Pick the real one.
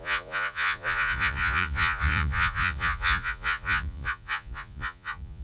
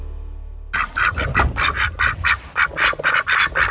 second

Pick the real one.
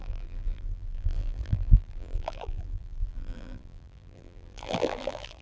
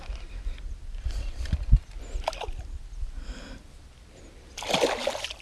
second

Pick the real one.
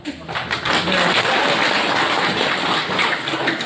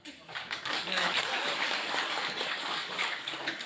first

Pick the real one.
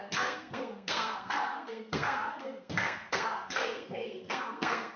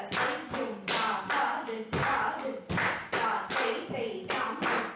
second